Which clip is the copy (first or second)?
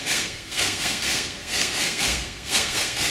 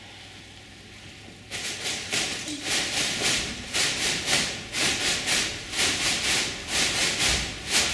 first